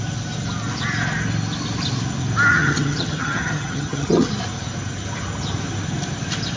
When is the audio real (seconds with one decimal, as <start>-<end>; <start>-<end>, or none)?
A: 0.0-2.5; 4.3-6.6